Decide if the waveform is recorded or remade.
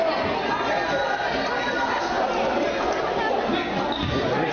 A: recorded